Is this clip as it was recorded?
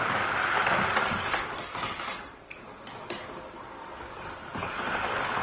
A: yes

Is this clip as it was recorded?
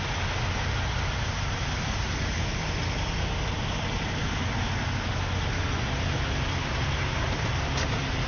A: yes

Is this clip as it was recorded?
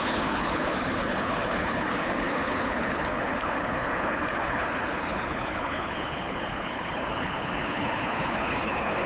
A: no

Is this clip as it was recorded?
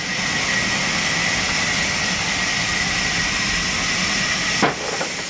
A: yes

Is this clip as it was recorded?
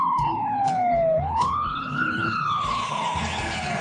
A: no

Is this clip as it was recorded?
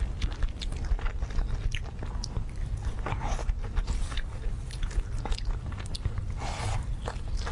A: yes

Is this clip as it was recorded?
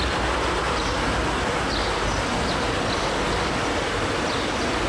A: yes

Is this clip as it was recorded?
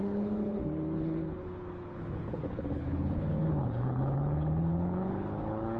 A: no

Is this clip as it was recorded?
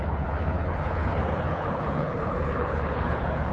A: no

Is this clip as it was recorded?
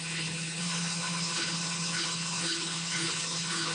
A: no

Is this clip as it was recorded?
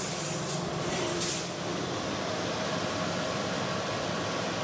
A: yes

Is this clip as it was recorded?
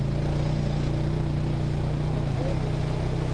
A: yes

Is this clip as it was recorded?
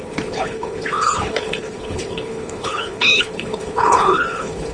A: no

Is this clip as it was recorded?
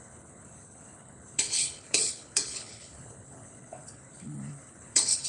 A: no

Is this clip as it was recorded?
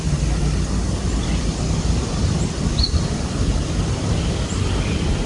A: yes